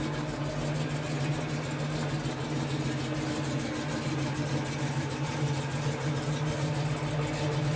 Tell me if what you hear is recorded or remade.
recorded